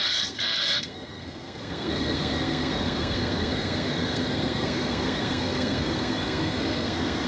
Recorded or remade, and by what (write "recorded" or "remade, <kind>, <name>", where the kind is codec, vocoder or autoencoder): remade, codec, SNAC